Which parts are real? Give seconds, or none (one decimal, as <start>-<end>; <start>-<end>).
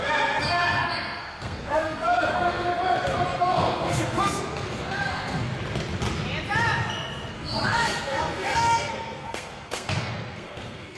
2.7-3.4; 5.5-7.3